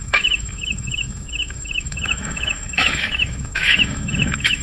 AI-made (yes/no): yes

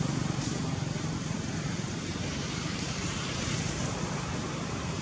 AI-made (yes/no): yes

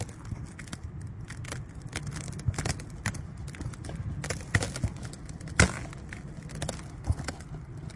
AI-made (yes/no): no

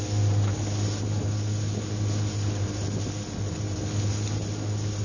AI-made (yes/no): no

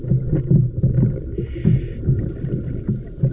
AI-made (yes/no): no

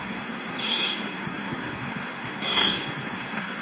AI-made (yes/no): yes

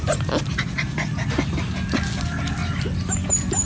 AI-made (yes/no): no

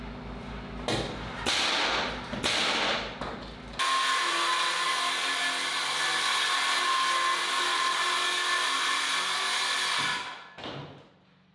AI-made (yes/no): no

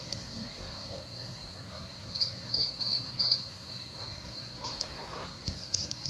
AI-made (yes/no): yes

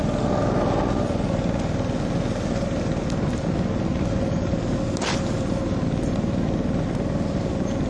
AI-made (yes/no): no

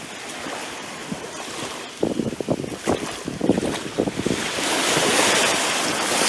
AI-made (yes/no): no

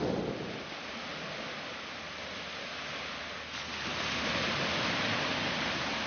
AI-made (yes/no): no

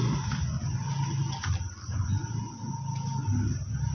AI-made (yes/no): no